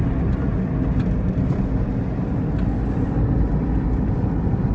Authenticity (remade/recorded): recorded